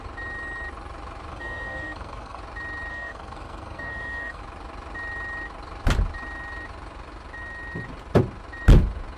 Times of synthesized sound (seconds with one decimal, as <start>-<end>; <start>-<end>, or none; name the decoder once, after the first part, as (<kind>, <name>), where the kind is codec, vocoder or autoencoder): 1.3-2.4 (codec, SNAC); 2.9-4.4